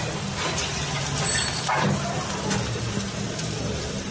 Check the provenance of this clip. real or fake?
real